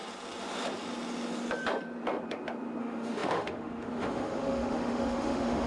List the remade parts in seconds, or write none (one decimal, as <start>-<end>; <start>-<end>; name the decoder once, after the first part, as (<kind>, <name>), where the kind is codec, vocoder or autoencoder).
2.8-5.7 (autoencoder, DAC-VAE)